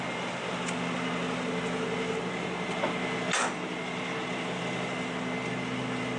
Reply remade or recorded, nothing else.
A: recorded